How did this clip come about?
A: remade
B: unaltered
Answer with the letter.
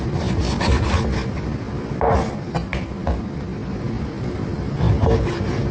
B